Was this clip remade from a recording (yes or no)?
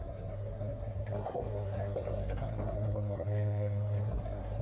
yes